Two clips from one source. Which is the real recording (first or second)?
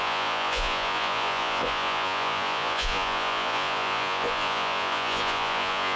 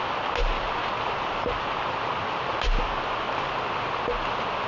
second